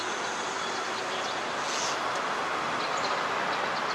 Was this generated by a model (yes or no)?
no